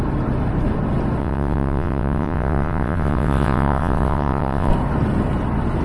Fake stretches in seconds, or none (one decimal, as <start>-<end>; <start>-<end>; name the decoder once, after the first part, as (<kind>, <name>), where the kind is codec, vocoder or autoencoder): 1.2-4.7 (vocoder, WaveNeXt)